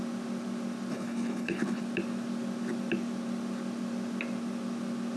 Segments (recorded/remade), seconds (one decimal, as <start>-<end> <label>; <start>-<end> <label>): 0.0-0.9 recorded; 0.9-1.8 remade; 1.8-5.2 recorded